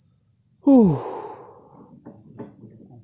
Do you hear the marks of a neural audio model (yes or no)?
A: no